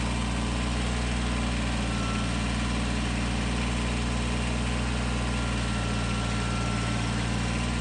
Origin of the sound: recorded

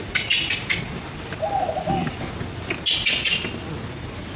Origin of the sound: recorded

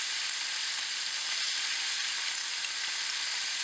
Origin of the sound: recorded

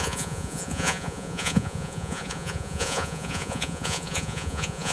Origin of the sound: remade